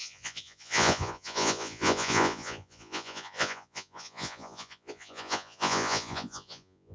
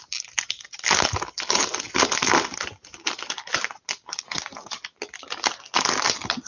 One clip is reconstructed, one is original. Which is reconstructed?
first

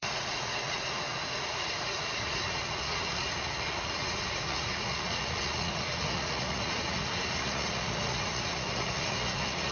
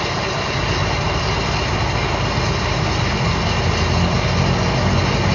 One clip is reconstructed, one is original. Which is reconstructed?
first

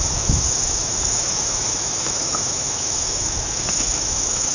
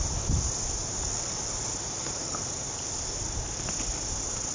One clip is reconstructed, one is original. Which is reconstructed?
first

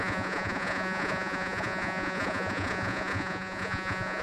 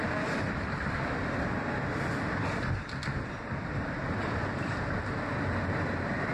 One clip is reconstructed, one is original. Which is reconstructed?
first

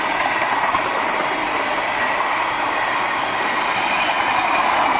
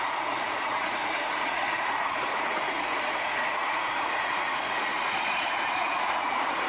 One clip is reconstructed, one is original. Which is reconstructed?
second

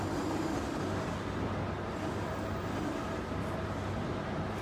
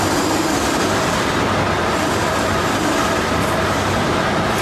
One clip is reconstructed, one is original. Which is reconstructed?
second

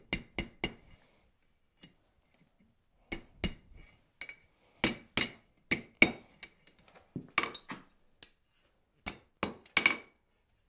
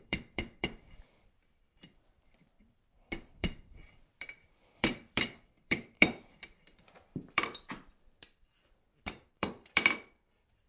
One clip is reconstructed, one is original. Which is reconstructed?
second